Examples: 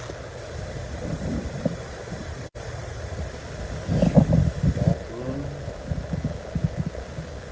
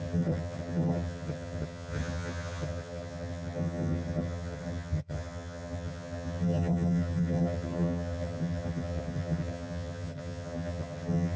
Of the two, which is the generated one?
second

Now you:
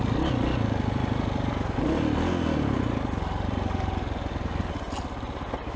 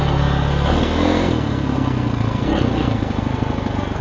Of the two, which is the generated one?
second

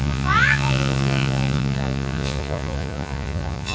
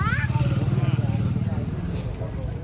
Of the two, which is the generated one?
first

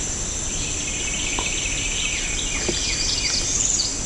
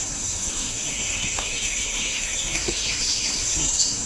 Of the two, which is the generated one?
second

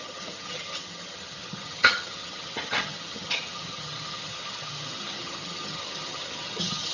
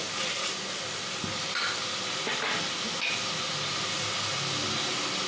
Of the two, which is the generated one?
first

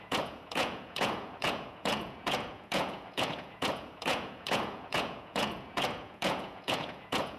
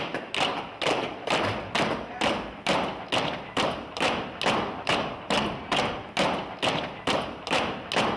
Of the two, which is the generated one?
first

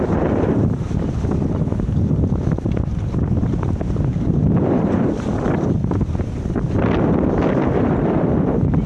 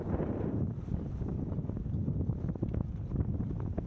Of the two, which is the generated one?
first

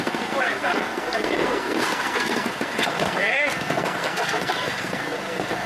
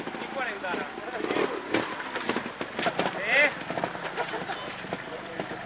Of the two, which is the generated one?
first